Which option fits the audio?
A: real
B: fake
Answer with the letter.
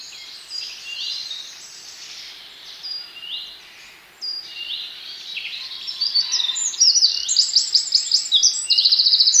A